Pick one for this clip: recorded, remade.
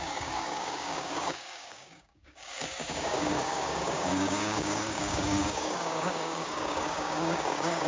remade